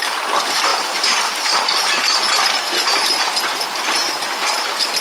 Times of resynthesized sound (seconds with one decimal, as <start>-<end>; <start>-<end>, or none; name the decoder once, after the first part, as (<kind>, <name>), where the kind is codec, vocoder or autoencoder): 0.7-2.0 (vocoder, BigVGAN v2)